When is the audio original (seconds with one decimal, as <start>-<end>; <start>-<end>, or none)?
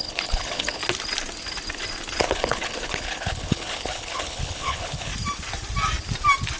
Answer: 0.8-2.2; 5.1-6.6